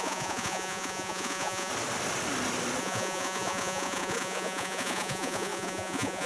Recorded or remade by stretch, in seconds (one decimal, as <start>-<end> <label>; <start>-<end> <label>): 0.0-1.7 remade; 1.7-2.8 recorded; 2.8-6.3 remade